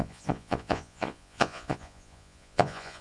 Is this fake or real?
fake